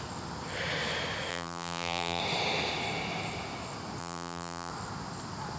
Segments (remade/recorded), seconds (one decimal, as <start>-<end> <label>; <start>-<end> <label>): 0.0-1.3 recorded; 1.3-2.2 remade; 2.2-4.0 recorded; 4.0-4.7 remade; 4.7-5.6 recorded